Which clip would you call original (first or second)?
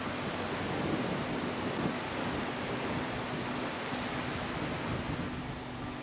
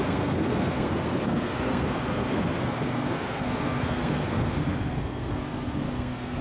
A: first